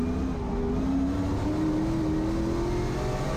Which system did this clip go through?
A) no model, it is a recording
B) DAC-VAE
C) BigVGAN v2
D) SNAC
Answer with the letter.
A